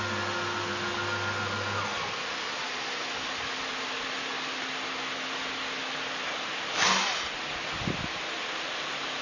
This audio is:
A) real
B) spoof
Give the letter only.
A